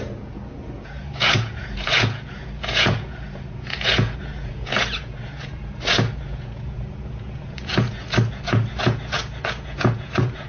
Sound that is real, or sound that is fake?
fake